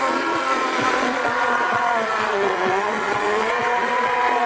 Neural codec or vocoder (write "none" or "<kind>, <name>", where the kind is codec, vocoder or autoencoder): vocoder, Vocos